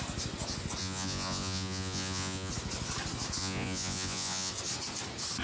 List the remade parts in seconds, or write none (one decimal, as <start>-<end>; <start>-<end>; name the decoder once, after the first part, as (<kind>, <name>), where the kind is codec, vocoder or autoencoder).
0.8-2.5 (vocoder, Vocos); 3.4-4.5